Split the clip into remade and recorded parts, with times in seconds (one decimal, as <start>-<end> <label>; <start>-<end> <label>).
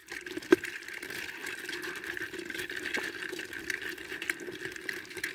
0.0-1.4 recorded; 1.4-4.6 remade; 4.6-5.3 recorded